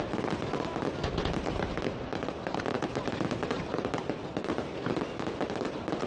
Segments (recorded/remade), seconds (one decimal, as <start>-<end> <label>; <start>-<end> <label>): 0.0-2.1 recorded; 2.1-4.0 remade; 4.0-6.1 recorded